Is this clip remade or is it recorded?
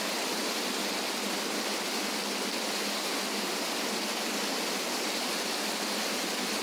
recorded